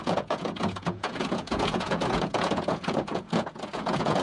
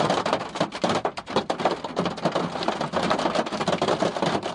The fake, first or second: first